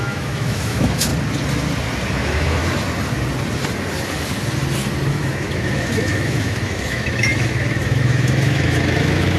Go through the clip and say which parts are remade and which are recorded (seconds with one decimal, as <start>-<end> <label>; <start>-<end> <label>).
0.0-1.1 remade; 1.1-2.1 recorded; 2.1-2.6 remade; 2.6-5.1 recorded; 5.1-9.4 remade